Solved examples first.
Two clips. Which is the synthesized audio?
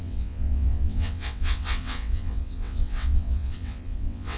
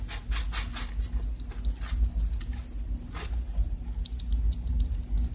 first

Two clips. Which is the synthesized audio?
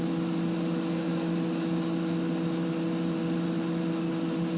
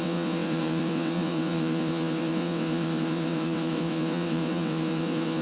second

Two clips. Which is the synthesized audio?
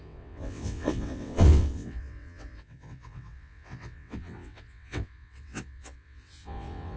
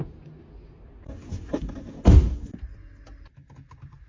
first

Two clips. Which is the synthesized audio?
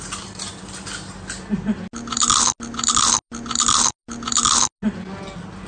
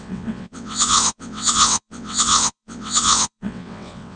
second